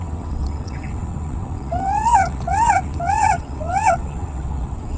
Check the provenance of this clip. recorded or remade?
remade